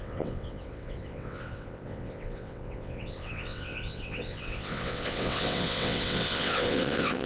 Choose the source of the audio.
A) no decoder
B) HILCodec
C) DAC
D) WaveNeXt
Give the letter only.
D